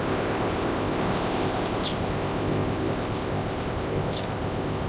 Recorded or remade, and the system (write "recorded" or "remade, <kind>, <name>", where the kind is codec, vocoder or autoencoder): remade, codec, ZipCodec